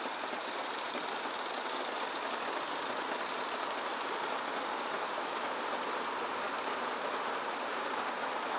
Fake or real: real